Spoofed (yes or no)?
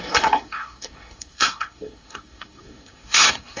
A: yes